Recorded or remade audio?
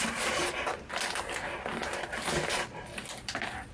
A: recorded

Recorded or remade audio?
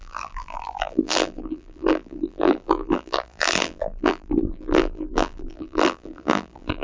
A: remade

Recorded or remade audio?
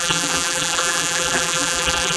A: remade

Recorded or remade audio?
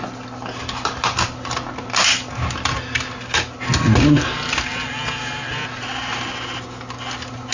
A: recorded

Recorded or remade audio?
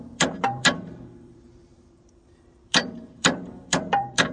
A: remade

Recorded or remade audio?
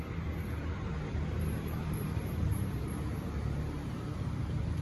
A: remade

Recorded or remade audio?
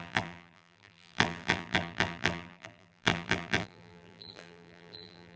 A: remade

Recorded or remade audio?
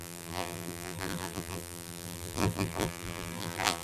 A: remade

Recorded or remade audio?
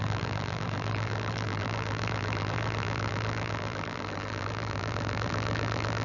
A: remade